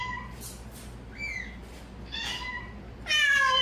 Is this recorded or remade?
recorded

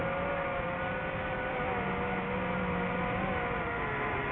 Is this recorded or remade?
recorded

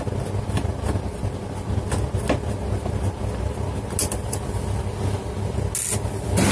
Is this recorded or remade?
recorded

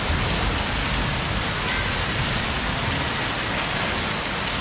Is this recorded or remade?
recorded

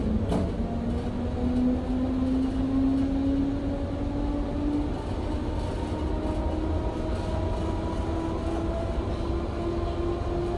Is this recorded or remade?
recorded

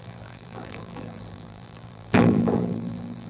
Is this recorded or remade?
remade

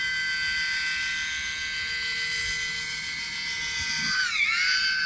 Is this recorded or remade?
recorded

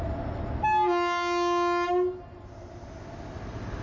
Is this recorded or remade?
recorded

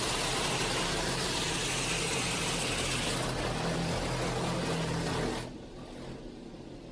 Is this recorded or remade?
recorded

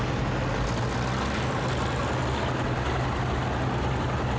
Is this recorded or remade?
recorded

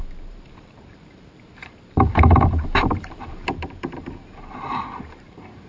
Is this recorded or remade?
remade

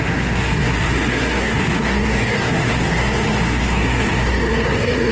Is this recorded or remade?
remade